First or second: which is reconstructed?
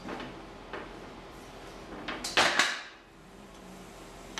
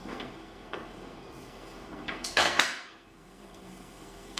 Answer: second